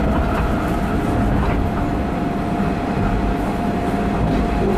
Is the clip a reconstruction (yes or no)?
no